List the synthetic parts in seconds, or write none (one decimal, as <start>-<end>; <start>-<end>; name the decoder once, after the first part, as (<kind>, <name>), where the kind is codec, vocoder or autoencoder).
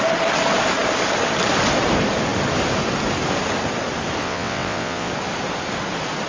4.2-5.1 (vocoder, WaveNeXt)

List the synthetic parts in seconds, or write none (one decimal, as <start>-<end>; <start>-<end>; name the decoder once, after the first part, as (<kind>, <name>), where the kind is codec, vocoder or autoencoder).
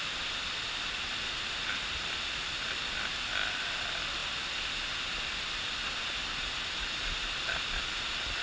none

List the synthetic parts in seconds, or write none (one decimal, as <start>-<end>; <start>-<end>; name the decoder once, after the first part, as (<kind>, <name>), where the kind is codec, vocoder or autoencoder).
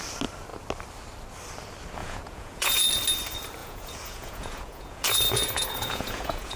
2.0-2.9 (vocoder, Vocos); 3.6-6.6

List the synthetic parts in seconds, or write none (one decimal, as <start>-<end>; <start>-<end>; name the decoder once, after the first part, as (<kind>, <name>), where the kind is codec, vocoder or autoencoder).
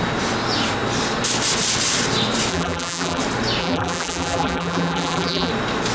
2.5-3.2 (vocoder, BigVGAN v2); 3.6-5.5